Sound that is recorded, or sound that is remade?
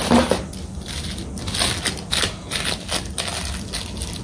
recorded